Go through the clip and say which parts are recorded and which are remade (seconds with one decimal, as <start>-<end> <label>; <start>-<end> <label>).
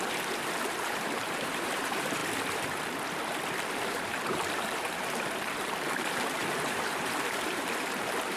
0.0-2.2 remade; 2.2-3.7 recorded; 3.7-8.4 remade